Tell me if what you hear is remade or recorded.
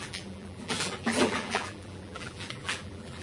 remade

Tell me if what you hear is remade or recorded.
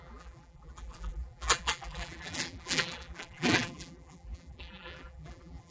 remade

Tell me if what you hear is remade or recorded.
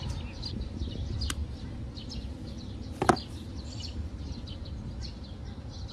recorded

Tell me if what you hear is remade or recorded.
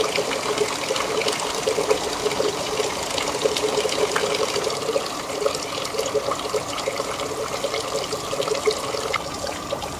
remade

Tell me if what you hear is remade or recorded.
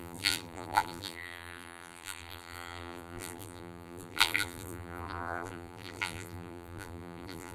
remade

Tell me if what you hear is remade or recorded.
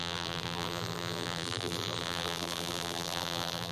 remade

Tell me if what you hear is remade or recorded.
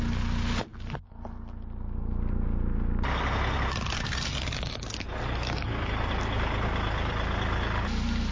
recorded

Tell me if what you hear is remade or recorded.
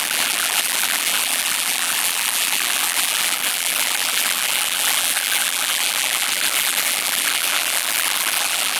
remade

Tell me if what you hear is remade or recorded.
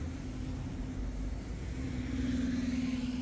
recorded